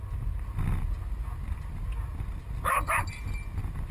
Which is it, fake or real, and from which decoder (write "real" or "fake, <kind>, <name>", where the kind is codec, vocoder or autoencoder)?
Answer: real